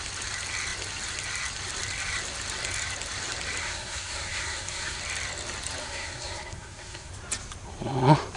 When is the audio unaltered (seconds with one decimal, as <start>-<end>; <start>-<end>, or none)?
0.0-3.6; 5.0-5.8; 7.1-8.4